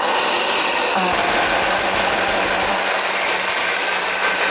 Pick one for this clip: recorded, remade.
recorded